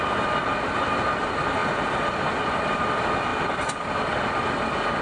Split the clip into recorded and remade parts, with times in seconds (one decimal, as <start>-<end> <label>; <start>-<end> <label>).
0.0-5.0 recorded

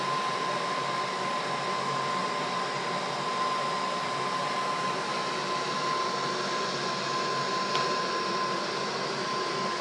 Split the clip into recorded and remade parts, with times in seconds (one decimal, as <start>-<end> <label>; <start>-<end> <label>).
0.0-9.8 recorded

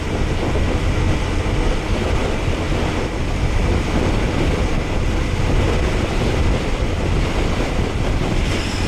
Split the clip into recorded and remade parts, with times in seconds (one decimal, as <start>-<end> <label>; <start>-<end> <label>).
0.0-8.9 recorded

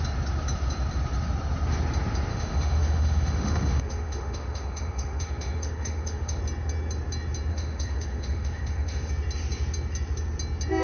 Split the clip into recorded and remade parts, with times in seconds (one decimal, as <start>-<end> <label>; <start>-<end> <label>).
0.0-2.3 recorded; 2.3-6.4 remade; 6.4-7.5 recorded; 7.5-9.1 remade; 9.1-10.8 recorded

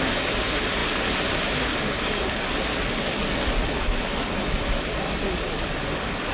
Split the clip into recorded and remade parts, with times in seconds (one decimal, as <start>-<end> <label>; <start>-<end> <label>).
0.0-6.3 recorded

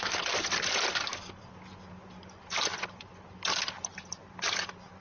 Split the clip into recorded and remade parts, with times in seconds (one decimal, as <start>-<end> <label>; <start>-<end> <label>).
0.0-5.0 recorded

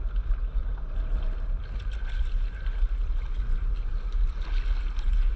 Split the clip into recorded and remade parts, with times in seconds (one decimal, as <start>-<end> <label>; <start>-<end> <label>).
0.0-5.4 recorded

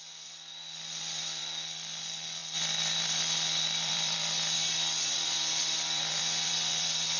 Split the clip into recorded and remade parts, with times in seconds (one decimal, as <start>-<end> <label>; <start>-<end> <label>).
0.0-7.2 remade